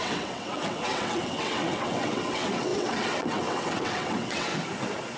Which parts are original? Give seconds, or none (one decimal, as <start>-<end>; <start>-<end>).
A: 4.5-5.2